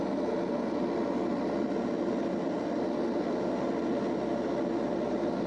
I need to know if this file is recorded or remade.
recorded